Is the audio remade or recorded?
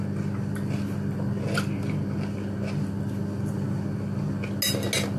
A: recorded